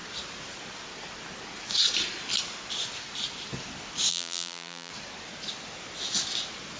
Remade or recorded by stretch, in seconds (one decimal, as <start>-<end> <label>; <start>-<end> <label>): 0.0-4.1 recorded; 4.1-4.9 remade; 4.9-6.8 recorded